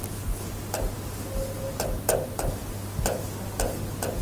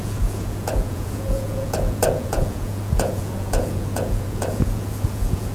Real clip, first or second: first